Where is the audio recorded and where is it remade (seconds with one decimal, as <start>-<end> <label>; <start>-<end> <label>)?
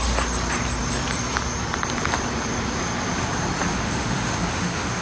0.0-3.7 recorded; 3.7-5.0 remade